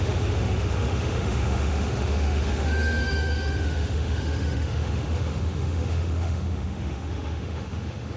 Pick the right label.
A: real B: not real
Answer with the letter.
B